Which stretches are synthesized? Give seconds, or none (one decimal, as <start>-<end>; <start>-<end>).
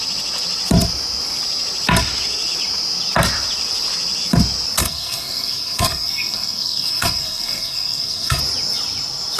4.8-8.4